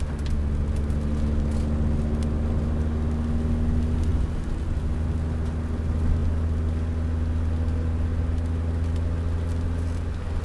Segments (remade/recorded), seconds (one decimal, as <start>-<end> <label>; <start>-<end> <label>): 0.0-10.4 recorded